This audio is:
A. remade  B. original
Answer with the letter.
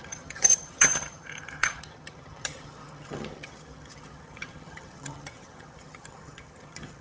A